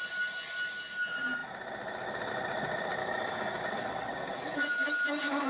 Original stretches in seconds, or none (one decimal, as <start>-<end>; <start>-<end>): 0.0-3.0; 3.6-4.5